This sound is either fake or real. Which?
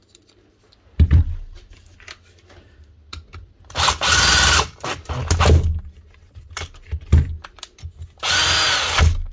real